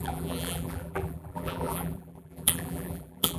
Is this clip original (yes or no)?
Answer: no